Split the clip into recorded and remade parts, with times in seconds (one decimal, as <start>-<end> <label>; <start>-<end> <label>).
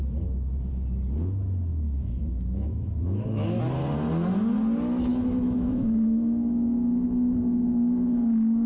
0.0-1.7 recorded; 1.7-3.6 remade; 3.6-5.1 recorded; 5.1-8.7 remade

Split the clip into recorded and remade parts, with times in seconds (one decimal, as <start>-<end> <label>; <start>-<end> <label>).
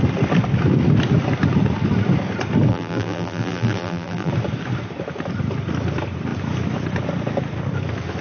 0.0-2.7 recorded; 2.7-4.3 remade; 4.3-8.2 recorded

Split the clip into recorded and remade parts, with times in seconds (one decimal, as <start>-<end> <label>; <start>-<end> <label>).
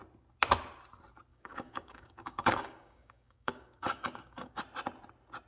0.0-1.3 recorded; 1.3-4.6 remade; 4.6-5.5 recorded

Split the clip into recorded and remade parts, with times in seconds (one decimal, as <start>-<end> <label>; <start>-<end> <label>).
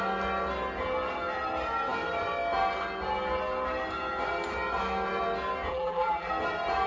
0.0-5.7 recorded; 5.7-6.3 remade; 6.3-6.9 recorded